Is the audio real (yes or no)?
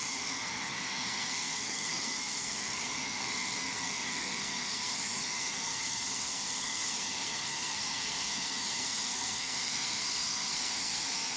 no